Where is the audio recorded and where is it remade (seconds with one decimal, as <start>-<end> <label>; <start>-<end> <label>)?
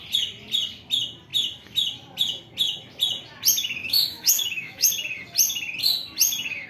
0.0-3.8 recorded; 3.8-4.9 remade; 4.9-6.7 recorded